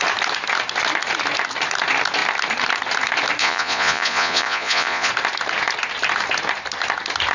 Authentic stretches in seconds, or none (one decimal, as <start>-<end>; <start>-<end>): 0.0-3.4; 5.1-7.3